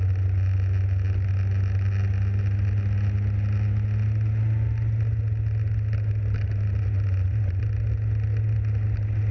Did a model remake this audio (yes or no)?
no